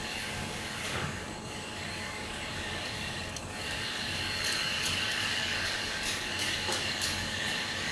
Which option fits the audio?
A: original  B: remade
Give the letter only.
B